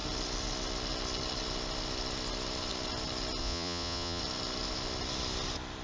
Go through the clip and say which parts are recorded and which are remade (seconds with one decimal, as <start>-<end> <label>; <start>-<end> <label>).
0.0-3.4 recorded; 3.4-4.2 remade; 4.2-5.8 recorded